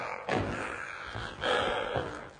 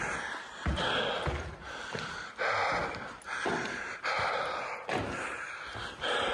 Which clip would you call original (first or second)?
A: second